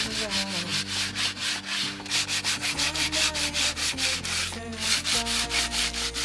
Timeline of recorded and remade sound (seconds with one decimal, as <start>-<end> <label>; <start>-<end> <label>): 0.0-6.2 recorded